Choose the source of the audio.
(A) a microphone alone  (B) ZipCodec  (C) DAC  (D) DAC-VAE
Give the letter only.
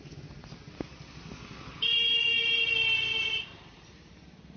A